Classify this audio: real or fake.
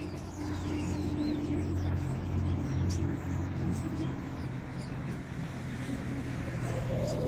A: fake